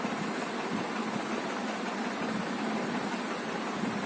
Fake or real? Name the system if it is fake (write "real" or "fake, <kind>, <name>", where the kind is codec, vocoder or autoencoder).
real